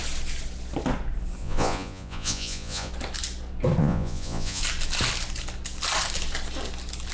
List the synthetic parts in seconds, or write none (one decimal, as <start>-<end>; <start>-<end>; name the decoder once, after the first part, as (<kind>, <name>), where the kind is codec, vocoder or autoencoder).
1.4-2.9 (vocoder, Vocos); 3.8-4.6

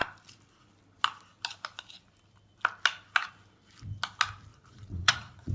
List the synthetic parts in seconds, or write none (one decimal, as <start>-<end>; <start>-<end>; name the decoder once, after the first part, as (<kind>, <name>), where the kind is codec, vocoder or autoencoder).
4.5-5.5 (vocoder, Vocos)

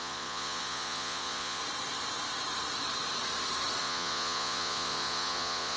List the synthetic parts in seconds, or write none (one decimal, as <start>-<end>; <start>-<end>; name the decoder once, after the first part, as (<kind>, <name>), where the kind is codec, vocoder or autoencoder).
0.0-1.6 (vocoder, Vocos); 3.8-5.8

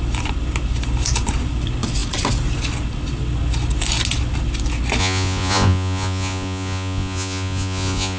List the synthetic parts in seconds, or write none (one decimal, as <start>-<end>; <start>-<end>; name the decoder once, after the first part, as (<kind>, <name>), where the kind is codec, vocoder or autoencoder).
5.0-8.2 (vocoder, Vocos)

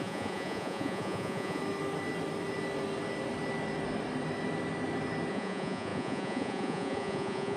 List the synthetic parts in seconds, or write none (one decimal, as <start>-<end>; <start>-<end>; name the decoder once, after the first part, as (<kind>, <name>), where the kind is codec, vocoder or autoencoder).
0.0-1.6 (vocoder, Vocos); 5.3-7.6